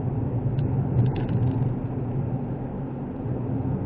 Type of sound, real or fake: real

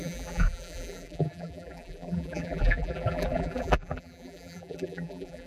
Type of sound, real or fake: fake